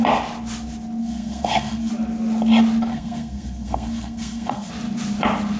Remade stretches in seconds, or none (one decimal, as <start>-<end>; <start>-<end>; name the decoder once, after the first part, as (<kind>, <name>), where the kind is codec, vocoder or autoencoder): 1.0-1.9 (codec, SNAC); 2.9-4.7